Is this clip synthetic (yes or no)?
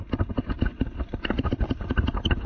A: no